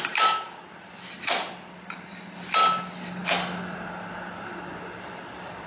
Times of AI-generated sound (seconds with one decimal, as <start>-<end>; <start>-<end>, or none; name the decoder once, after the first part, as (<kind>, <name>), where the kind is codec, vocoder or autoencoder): none